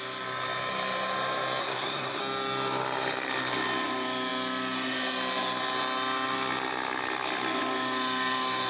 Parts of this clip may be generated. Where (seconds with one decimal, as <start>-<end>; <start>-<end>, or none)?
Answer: 1.6-2.2